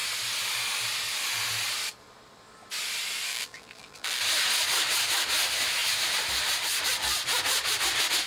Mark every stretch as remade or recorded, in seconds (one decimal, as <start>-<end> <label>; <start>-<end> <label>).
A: 0.0-3.3 recorded; 3.3-4.2 remade; 4.2-8.3 recorded